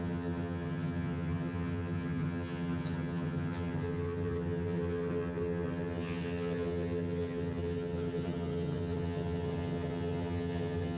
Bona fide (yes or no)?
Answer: no